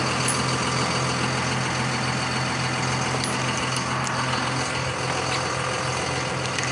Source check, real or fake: real